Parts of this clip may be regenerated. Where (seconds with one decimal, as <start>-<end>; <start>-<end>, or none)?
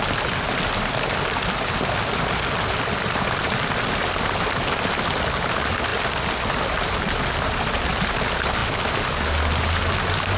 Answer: none